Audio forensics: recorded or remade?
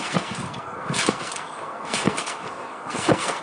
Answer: remade